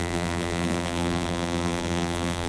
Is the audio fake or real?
fake